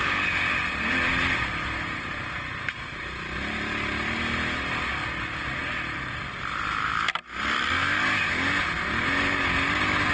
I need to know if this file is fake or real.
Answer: real